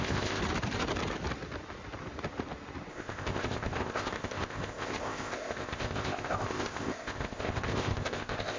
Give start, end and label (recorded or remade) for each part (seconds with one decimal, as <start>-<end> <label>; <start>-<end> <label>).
0.0-0.4 remade; 0.4-2.9 recorded; 2.9-8.6 remade